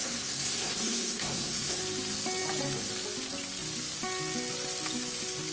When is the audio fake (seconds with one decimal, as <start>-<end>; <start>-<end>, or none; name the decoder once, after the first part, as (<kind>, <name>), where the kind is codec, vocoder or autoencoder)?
0.0-1.8 (codec, SNAC)